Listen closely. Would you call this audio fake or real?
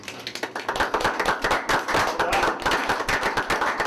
real